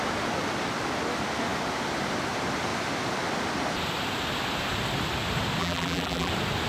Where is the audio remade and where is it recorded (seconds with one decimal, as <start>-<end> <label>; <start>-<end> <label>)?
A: 0.0-5.6 recorded; 5.6-6.3 remade; 6.3-6.7 recorded